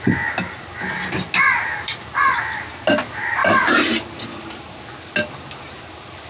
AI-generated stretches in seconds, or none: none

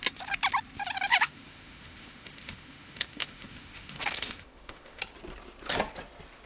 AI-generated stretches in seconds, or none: 1.1-5.0 (autoencoder, DAC-VAE)

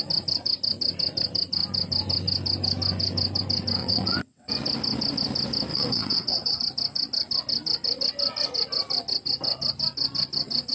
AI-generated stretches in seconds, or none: 3.8-4.5 (vocoder, WaveNeXt); 5.7-6.6

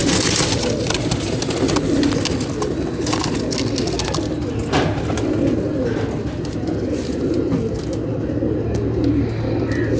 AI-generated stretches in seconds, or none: none

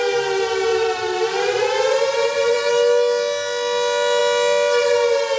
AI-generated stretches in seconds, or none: 0.7-2.7 (vocoder, BigVGAN v2)

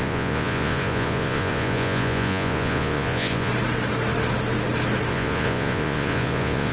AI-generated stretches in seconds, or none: 0.0-3.5 (vocoder, Vocos); 5.1-6.7

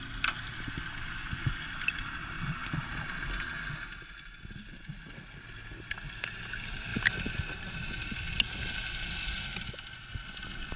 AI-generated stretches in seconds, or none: none

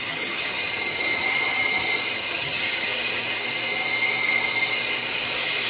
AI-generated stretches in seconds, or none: 0.0-2.9 (vocoder, HiFi-GAN)